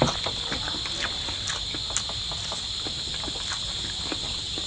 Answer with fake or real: real